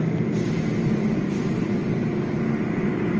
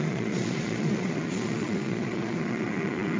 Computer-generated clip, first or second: second